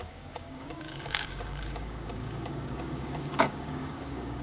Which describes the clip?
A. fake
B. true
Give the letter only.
A